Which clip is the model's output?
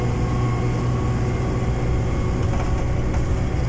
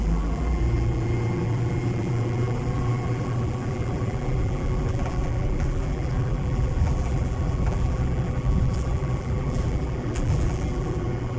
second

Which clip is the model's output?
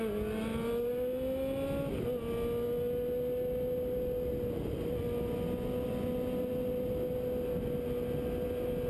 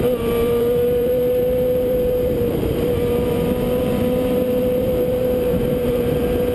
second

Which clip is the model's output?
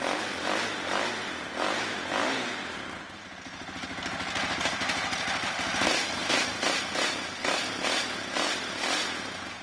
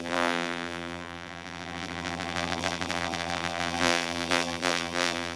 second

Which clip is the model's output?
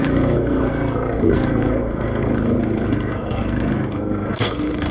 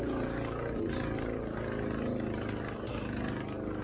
first